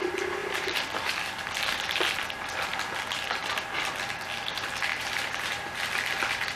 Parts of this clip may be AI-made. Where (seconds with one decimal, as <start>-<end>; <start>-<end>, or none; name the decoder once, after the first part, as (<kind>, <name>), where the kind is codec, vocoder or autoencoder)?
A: 0.4-0.9 (vocoder, BigVGAN v2); 4.9-5.9